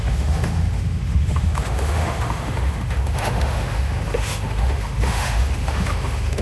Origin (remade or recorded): remade